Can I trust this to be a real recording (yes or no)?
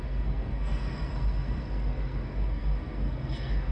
no